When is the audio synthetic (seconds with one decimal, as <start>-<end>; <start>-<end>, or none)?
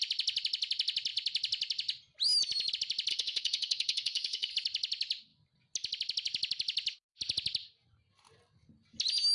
3.1-4.5